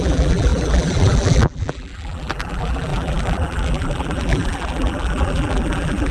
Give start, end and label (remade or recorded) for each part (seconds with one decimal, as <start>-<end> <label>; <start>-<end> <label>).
0.0-6.1 remade